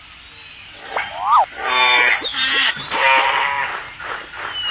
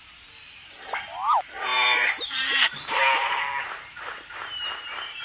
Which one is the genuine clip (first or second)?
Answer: first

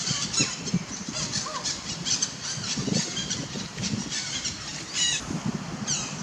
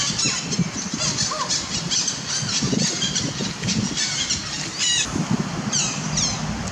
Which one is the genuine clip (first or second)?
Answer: second